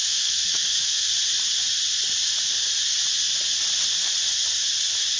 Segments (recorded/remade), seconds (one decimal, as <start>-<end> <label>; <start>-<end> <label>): 0.0-1.1 remade; 1.1-5.2 recorded

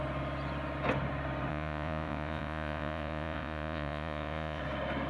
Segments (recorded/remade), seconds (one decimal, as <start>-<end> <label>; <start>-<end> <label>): 0.0-1.5 recorded; 1.5-4.6 remade; 4.6-5.1 recorded

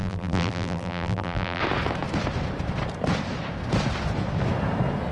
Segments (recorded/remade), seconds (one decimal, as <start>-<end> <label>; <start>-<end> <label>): 0.0-1.6 remade; 1.6-5.1 recorded

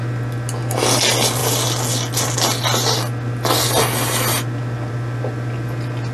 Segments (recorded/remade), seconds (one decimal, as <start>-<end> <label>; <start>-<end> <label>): 0.0-6.1 recorded